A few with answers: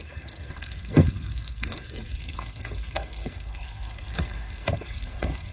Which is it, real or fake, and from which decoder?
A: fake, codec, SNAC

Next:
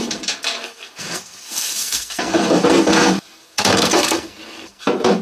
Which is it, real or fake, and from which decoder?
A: fake, codec, SNAC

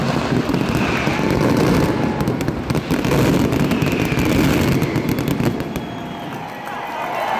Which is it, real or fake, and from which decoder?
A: real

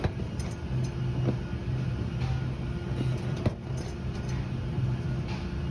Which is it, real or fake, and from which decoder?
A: real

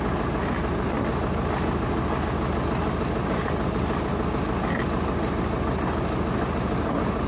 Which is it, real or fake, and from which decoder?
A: real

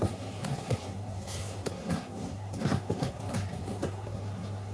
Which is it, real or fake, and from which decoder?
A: fake, codec, SNAC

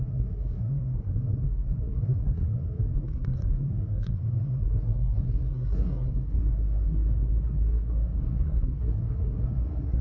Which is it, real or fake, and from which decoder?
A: fake, codec, SNAC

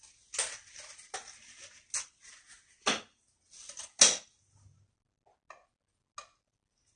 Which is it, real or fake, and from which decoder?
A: real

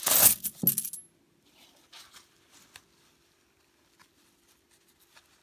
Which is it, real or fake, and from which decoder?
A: real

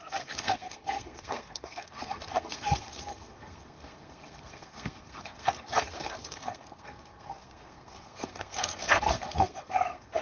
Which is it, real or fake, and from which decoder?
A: fake, codec, SNAC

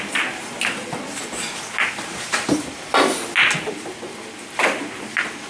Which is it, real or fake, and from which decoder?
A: real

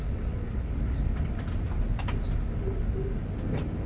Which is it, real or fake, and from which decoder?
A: real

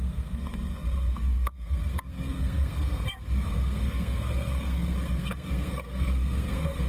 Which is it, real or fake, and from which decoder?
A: fake, codec, SNAC